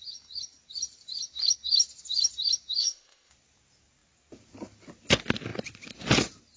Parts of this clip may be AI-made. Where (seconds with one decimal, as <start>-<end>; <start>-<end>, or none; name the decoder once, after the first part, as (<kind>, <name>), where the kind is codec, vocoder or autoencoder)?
2.8-3.3 (codec, ZipCodec)